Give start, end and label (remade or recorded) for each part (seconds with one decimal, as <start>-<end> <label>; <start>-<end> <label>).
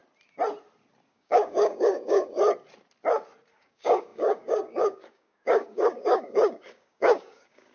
0.0-1.1 recorded; 1.1-2.4 remade; 2.4-3.5 recorded; 3.5-7.7 remade